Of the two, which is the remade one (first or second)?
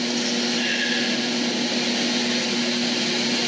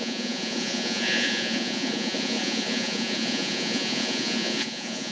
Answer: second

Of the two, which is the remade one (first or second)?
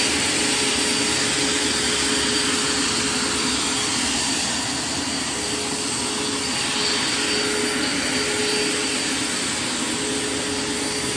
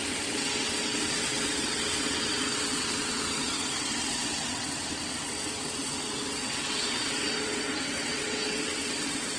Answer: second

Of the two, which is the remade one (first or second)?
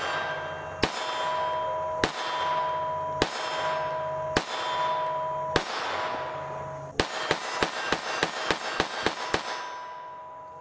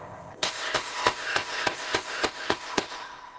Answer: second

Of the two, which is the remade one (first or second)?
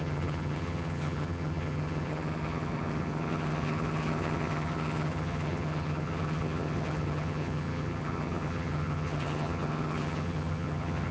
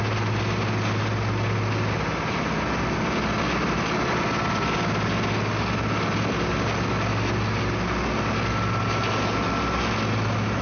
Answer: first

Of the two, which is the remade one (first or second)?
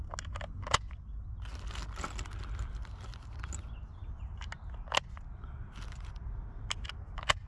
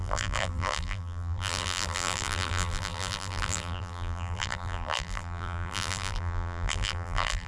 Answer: second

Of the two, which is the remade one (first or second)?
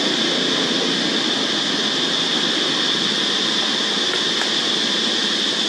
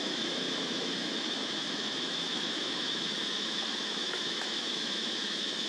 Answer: second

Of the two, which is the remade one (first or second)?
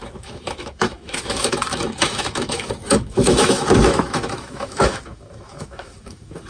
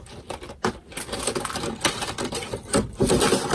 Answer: first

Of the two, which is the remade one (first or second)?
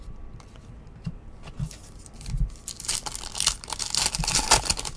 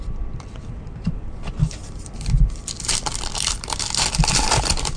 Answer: second